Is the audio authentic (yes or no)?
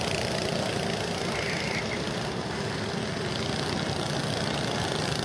yes